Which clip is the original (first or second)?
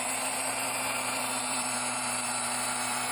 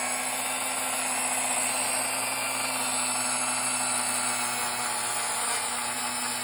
second